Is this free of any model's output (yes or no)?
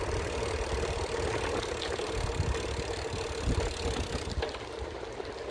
yes